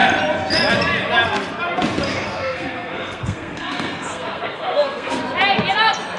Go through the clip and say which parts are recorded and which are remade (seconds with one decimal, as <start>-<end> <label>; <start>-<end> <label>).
0.0-2.1 recorded; 2.1-5.2 remade; 5.2-6.2 recorded